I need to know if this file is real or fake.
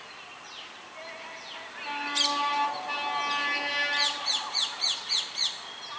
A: real